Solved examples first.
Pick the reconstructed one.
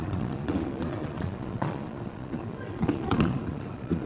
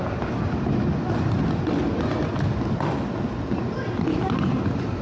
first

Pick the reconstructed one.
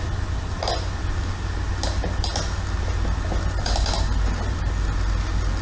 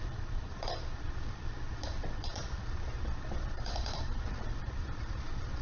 second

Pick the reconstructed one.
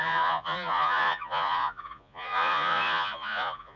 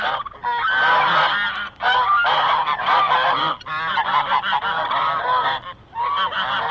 first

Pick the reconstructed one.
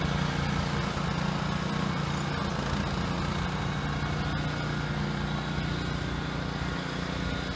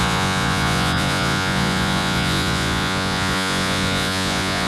second